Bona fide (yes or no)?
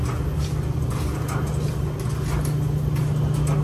yes